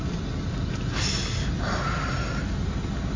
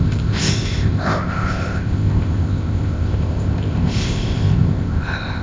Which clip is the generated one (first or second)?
second